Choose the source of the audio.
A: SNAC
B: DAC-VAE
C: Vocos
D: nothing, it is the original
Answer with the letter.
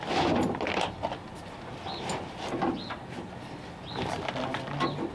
D